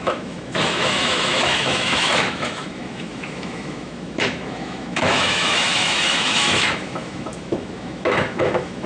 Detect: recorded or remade remade